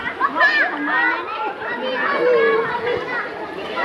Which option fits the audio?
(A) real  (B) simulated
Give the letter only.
A